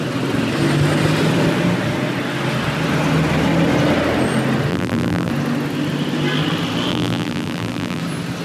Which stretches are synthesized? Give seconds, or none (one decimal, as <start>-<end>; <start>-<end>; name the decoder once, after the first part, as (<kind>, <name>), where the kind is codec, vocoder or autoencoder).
4.7-5.3 (vocoder, BigVGAN v2); 6.9-8.0